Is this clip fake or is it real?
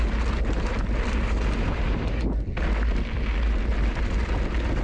real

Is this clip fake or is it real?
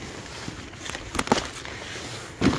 real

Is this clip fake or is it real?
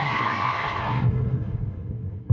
fake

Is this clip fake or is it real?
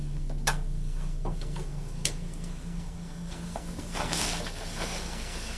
fake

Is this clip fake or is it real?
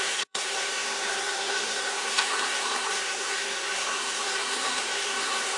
fake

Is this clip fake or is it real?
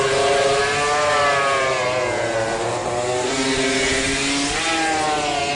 real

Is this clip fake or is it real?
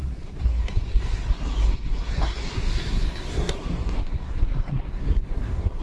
fake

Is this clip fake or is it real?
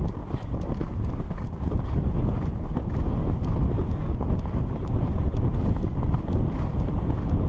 real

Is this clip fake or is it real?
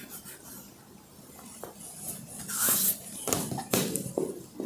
real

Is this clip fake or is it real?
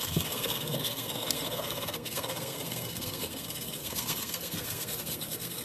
fake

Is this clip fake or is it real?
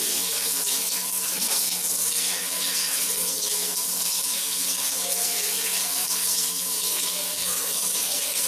fake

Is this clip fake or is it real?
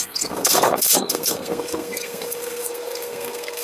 fake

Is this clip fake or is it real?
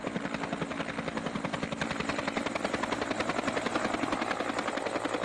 real